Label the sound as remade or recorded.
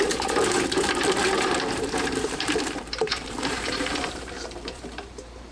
remade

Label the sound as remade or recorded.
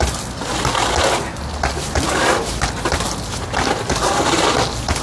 recorded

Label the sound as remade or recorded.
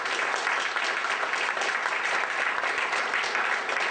recorded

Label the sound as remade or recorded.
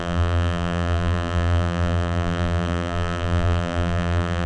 remade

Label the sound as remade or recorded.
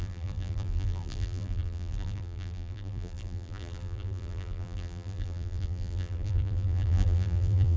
remade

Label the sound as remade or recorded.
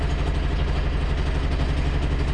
recorded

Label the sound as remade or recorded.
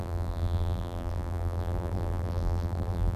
remade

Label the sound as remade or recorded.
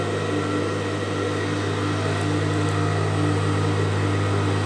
recorded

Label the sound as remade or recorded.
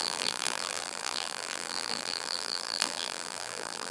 remade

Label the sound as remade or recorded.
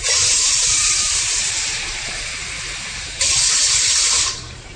remade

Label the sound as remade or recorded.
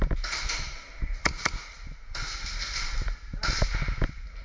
recorded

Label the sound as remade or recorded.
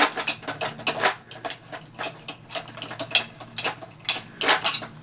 recorded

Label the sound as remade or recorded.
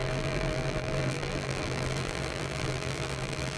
remade